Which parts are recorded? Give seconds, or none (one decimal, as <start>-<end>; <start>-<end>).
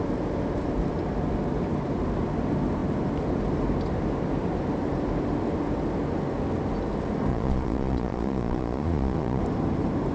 0.0-7.3; 9.4-10.1